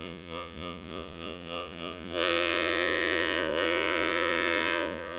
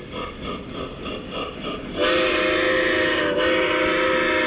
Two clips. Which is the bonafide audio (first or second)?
second